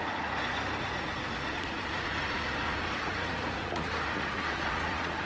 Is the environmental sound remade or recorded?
remade